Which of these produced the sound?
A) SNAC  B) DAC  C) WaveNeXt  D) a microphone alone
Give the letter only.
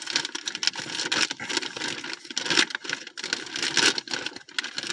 D